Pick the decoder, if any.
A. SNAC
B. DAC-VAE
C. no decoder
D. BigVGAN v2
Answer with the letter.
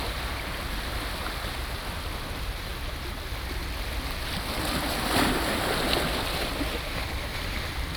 C